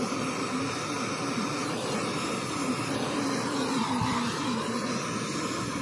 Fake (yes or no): no